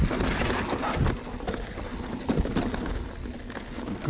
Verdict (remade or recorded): recorded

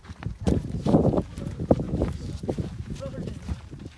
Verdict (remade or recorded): remade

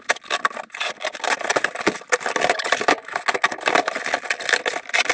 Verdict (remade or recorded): recorded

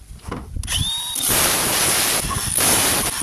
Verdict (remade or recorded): recorded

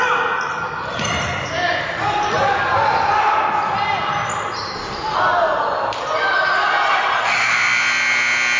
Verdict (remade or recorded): recorded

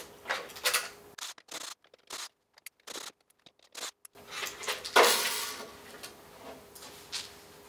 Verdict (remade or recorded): recorded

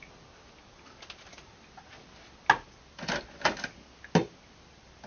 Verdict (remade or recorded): recorded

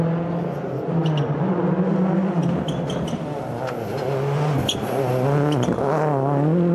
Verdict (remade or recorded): recorded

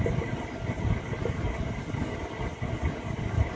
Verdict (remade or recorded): recorded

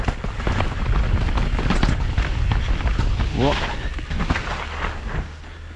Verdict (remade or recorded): recorded